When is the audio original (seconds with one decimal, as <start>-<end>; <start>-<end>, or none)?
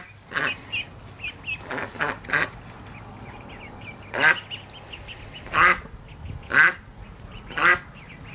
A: 0.0-6.9; 7.5-8.3